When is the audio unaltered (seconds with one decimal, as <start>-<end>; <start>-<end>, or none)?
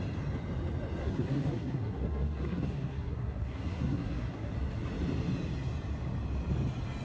0.0-1.0; 4.5-7.0